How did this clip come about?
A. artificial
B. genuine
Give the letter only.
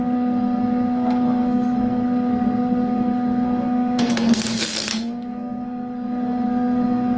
A